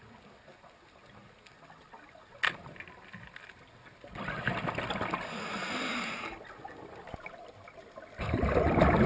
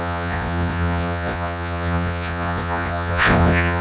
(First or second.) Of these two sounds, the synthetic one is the second